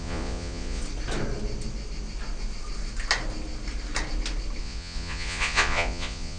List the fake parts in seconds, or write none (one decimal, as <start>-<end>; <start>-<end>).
0.0-0.8; 4.6-6.4